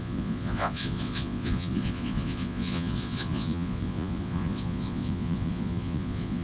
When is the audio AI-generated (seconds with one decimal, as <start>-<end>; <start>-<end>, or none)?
0.0-6.4